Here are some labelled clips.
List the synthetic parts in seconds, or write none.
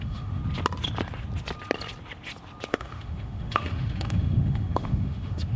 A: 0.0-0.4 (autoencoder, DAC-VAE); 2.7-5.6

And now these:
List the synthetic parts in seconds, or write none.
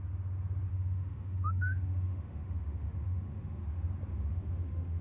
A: 0.7-3.6 (autoencoder, DAC-VAE); 4.1-5.0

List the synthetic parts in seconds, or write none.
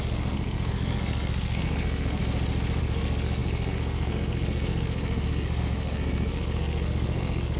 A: 0.0-2.2 (codec, SNAC); 2.8-7.6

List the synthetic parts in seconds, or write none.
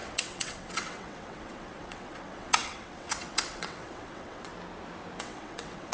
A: 0.0-4.5 (vocoder, WaveNeXt); 5.2-5.9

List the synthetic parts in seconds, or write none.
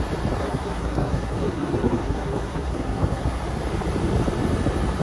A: 0.4-3.4 (codec, SNAC)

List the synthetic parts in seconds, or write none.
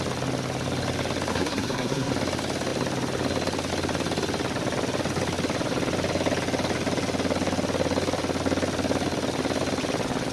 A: 1.3-2.1 (codec, SNAC)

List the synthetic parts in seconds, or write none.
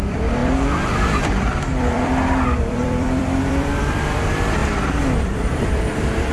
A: 0.0-6.3 (vocoder, BigVGAN v2)